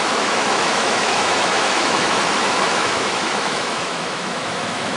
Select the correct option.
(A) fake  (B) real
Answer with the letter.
A